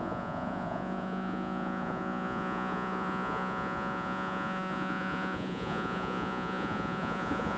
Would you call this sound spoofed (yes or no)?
yes